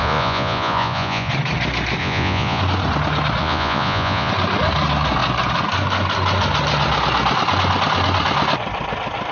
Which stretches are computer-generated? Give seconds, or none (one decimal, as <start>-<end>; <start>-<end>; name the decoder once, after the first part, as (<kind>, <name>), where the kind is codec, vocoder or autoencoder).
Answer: 0.0-1.3 (vocoder, Vocos); 2.0-2.6; 3.4-4.3